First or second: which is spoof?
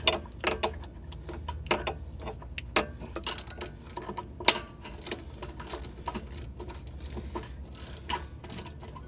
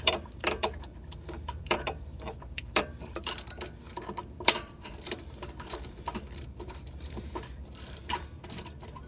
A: second